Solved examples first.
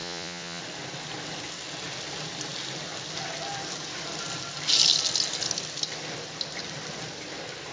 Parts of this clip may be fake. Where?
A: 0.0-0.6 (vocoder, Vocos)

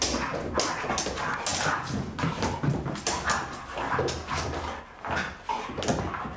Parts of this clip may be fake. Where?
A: none